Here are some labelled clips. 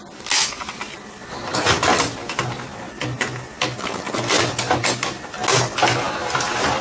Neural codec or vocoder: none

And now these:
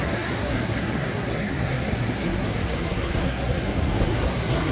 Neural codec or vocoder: codec, SNAC